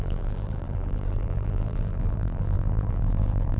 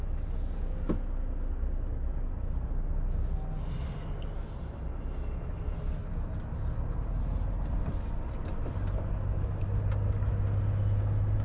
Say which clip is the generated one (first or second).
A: first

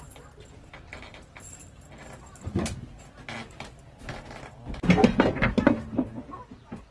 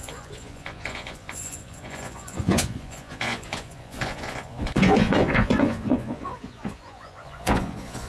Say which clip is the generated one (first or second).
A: second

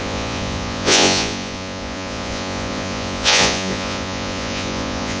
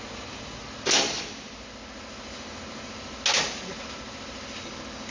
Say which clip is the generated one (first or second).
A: first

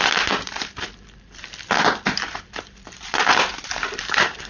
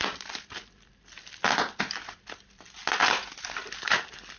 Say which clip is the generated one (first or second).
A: first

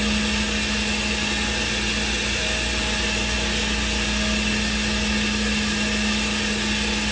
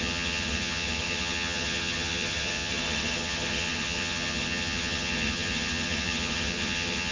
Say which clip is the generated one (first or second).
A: second